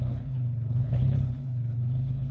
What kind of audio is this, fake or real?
fake